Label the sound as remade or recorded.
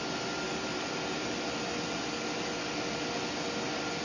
recorded